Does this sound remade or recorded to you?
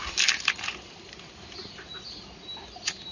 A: recorded